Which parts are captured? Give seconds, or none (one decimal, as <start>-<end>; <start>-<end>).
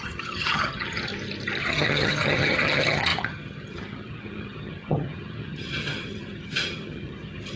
1.1-1.6